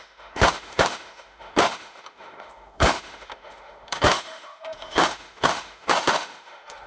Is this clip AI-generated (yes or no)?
yes